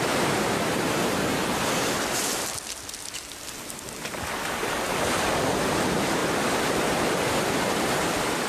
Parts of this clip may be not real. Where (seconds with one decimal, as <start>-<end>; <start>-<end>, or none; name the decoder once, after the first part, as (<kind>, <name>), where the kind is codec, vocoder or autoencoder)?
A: 0.0-1.3 (vocoder, BigVGAN v2); 4.4-8.5